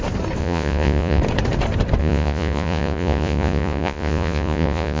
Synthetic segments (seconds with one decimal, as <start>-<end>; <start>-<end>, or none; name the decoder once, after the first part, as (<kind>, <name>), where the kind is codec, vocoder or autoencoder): 0.4-1.2 (vocoder, Vocos); 2.0-5.0